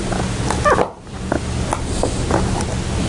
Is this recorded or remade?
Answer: recorded